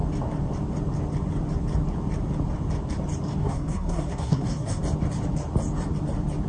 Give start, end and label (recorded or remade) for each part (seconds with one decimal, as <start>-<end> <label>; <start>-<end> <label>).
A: 0.0-3.4 recorded; 3.4-4.8 remade; 4.8-6.5 recorded